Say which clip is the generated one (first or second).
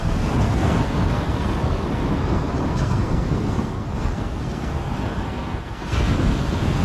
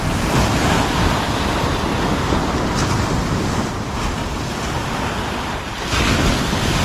first